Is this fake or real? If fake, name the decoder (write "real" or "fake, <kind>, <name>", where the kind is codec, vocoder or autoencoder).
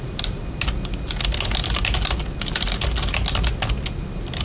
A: real